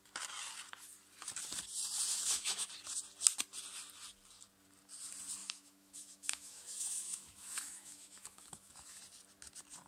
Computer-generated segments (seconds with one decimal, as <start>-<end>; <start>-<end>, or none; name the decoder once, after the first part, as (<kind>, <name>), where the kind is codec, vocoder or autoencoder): 2.1-2.7 (autoencoder, DAC-VAE); 5.4-9.0